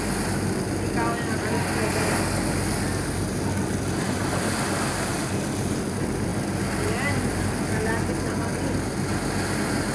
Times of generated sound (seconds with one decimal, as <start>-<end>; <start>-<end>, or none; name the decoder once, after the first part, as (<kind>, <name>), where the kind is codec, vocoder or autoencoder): none